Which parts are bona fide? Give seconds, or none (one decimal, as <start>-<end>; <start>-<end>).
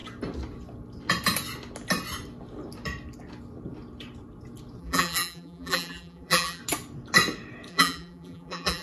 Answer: 0.0-4.8; 6.6-7.7